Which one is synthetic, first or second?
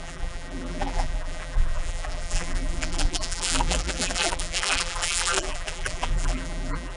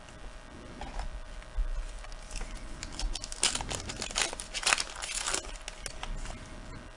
first